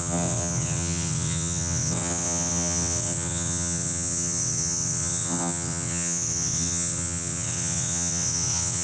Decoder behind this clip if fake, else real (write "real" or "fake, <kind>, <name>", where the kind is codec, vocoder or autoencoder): fake, vocoder, WaveNeXt